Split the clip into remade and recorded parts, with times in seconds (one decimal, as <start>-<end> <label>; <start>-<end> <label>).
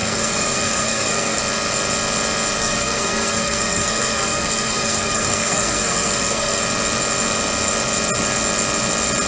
0.0-1.4 remade; 1.4-2.6 recorded; 2.6-6.6 remade; 6.6-9.3 recorded